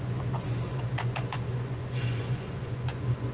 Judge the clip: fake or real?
fake